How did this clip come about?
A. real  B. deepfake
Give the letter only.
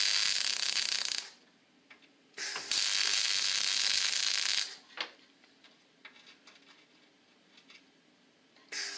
A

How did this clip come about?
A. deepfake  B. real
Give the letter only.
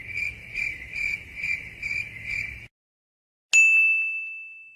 B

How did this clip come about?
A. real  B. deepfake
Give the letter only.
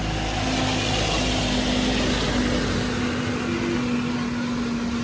A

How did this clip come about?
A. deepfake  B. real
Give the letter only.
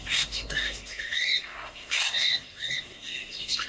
A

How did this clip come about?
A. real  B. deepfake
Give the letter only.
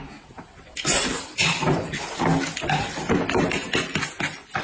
A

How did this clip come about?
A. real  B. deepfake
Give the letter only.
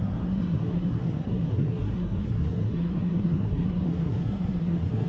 B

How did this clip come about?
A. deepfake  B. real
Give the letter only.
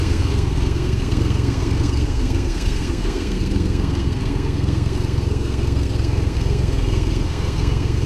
A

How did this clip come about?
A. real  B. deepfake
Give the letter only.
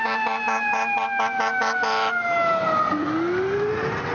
A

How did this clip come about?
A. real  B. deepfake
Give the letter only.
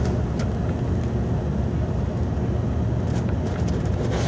A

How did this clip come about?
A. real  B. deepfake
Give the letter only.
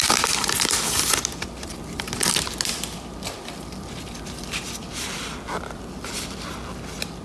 B